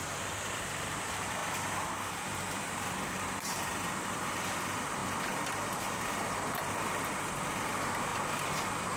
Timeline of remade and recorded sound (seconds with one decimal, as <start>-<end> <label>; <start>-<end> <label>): 0.0-1.4 remade; 1.4-1.9 recorded; 1.9-9.0 remade